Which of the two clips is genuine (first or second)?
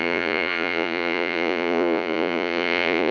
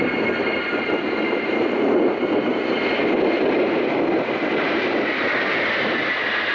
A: second